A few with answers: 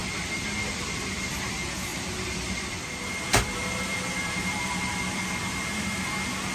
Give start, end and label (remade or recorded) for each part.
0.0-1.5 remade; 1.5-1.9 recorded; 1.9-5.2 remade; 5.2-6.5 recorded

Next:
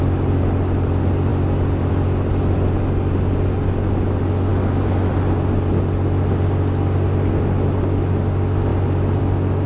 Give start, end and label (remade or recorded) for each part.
0.0-9.7 recorded

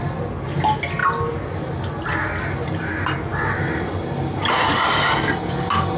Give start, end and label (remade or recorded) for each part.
0.0-3.3 recorded; 3.3-4.5 remade; 4.5-6.0 recorded

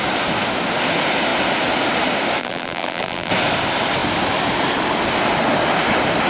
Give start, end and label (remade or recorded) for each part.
0.0-2.4 recorded; 2.4-3.3 remade; 3.3-6.3 recorded

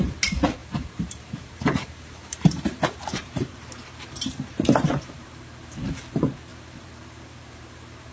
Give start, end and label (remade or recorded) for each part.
0.0-0.6 recorded; 0.6-5.4 remade; 5.4-6.5 recorded; 6.5-8.1 remade

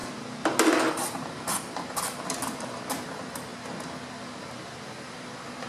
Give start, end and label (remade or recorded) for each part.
0.0-0.9 recorded; 0.9-3.5 remade; 3.5-4.8 recorded; 4.8-5.7 remade